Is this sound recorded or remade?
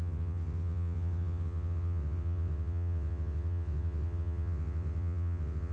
remade